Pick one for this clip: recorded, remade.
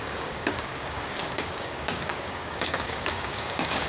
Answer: remade